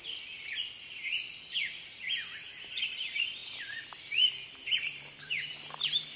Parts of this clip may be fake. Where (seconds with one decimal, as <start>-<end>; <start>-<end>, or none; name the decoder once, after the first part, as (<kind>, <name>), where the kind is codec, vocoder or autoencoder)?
3.4-5.5 (vocoder, BigVGAN v2)